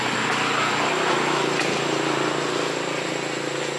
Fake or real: real